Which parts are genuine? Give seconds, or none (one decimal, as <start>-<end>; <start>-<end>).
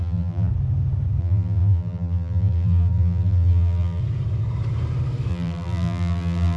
0.5-1.2; 4.0-5.3